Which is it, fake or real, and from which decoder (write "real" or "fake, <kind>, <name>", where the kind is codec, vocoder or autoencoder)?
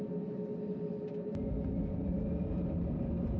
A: real